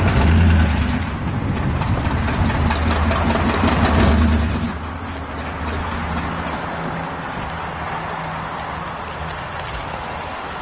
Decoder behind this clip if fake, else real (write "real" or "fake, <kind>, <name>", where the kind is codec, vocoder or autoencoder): real